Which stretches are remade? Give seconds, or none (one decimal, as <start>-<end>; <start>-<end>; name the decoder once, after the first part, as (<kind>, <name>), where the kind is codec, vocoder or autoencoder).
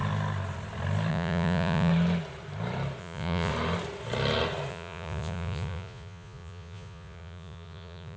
1.1-1.9 (vocoder, Vocos); 3.0-3.5; 4.7-8.2